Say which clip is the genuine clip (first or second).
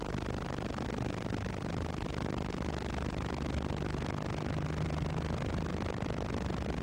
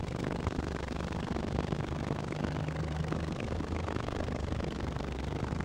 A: first